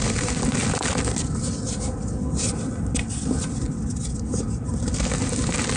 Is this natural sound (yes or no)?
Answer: yes